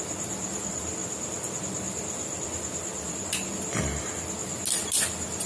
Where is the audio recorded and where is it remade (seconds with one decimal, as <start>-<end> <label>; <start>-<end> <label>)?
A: 0.0-5.5 recorded